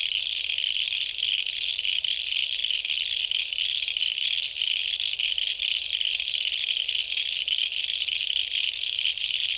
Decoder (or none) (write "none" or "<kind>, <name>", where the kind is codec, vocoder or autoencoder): none